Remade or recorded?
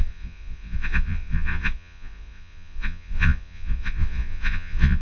remade